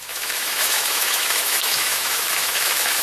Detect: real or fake fake